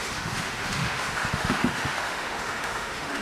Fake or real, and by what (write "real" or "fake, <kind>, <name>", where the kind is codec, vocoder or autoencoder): fake, autoencoder, DAC-VAE